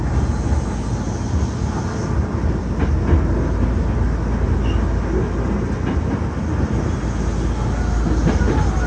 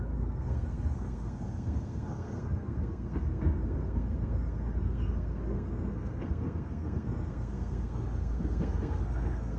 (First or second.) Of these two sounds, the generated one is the second